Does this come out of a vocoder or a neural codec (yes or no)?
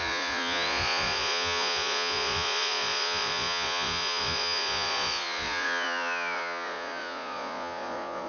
yes